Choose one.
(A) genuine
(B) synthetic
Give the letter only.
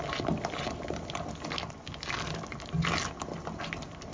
A